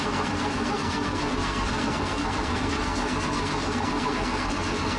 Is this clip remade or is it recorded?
remade